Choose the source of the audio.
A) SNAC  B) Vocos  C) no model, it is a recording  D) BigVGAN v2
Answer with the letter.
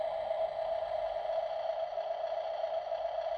C